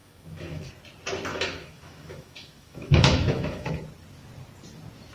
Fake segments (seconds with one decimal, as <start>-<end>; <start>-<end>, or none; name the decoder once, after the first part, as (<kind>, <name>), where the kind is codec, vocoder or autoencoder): 0.0-0.7 (autoencoder, DAC-VAE); 1.3-3.7